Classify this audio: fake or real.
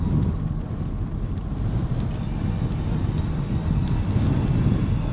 real